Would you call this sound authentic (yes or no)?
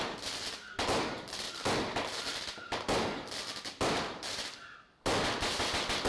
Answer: yes